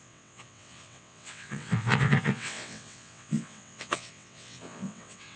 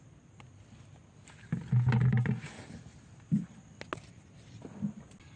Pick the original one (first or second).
second